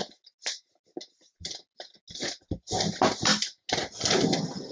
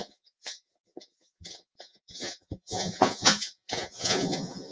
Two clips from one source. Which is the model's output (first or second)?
second